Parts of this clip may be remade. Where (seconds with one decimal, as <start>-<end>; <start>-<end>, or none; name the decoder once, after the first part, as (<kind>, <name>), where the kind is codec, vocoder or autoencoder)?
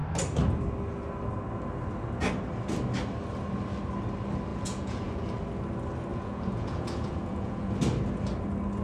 4.5-5.4 (vocoder, Vocos); 6.1-7.7